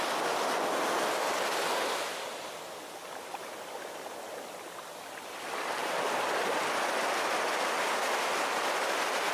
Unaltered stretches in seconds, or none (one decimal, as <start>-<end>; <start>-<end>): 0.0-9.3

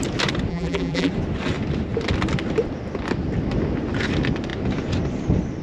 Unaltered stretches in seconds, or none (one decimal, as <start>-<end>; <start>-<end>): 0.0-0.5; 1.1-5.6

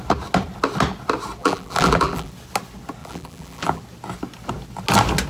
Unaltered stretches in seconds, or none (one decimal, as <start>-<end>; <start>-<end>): 0.0-1.4; 2.3-3.0; 3.8-5.3

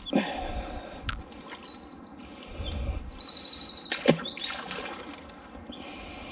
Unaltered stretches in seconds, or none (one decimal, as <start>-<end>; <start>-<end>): 0.0-6.3